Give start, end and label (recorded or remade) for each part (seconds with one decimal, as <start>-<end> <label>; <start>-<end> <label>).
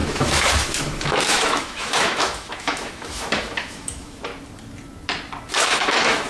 0.0-4.3 remade; 4.3-5.5 recorded; 5.5-6.3 remade